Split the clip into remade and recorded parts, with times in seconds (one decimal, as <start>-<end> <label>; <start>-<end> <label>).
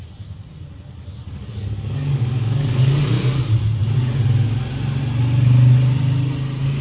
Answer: 0.0-1.2 recorded; 1.2-3.0 remade; 3.0-6.8 recorded